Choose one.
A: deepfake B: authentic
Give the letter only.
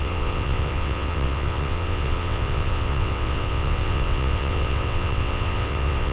A